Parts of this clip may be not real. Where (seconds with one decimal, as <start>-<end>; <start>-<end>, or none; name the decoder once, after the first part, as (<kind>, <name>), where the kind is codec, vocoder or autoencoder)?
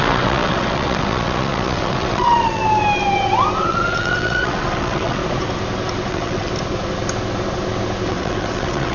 0.0-2.6 (vocoder, WaveNeXt); 3.6-5.2; 6.1-6.5; 8.1-8.9